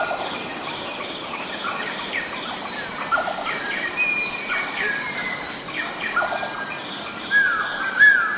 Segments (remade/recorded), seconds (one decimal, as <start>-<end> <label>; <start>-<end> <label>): 0.0-0.5 recorded; 0.5-3.9 remade; 3.9-8.4 recorded